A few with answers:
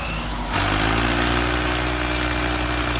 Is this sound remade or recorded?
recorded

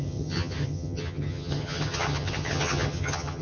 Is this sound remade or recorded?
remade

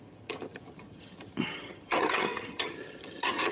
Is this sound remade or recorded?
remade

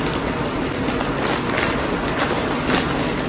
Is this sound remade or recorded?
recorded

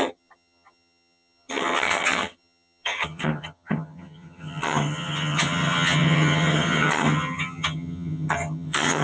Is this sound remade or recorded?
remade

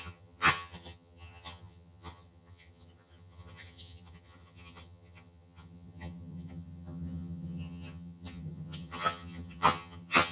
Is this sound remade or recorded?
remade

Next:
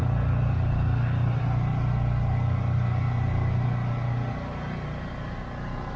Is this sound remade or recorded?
recorded